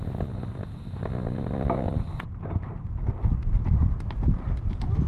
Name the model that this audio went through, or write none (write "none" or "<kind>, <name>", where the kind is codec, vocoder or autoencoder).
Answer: none